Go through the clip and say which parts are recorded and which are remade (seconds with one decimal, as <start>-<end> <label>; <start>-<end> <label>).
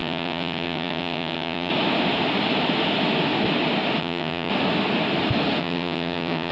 0.0-1.7 remade; 1.7-4.0 recorded; 4.0-4.5 remade; 4.5-5.6 recorded; 5.6-6.5 remade